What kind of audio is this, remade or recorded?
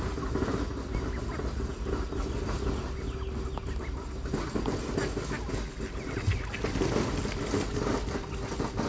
recorded